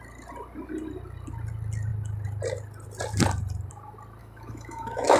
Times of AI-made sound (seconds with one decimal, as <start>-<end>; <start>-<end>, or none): 4.2-5.2